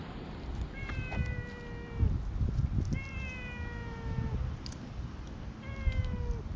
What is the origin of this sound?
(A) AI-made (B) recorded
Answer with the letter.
B